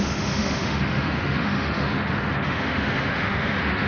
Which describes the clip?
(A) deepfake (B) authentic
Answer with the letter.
A